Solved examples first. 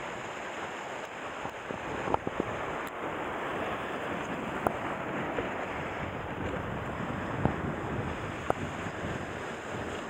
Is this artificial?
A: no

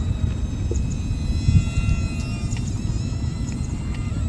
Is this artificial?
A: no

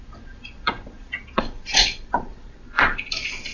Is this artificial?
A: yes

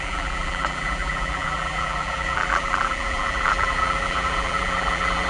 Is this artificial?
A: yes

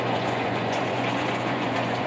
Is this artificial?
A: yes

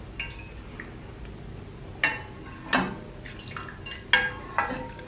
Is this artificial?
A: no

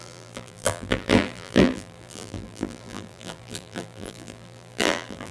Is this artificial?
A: yes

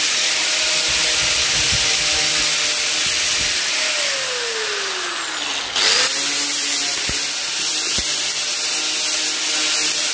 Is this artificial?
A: no